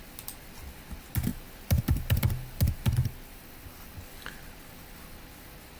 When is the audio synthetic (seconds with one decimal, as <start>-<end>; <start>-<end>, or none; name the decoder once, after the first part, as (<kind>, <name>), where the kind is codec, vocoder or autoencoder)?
1.3-2.2 (vocoder, BigVGAN v2); 3.0-4.0